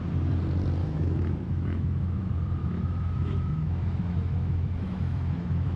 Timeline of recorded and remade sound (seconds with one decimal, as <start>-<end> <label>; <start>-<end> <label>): 0.0-0.8 recorded; 0.8-2.2 remade; 2.2-2.6 recorded; 2.6-5.8 remade